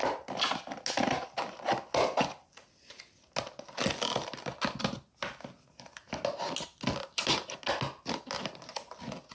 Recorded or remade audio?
recorded